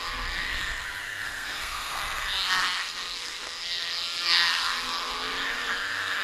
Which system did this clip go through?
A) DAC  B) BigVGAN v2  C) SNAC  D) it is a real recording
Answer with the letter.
C